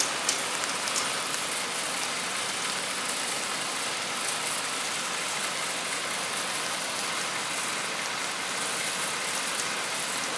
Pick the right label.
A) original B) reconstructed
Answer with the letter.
A